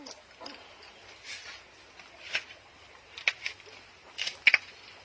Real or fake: real